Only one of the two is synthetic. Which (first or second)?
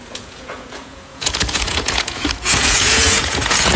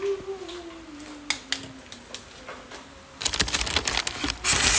first